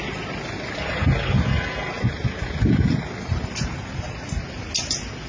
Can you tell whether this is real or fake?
real